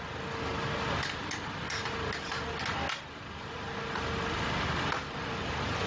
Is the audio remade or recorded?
recorded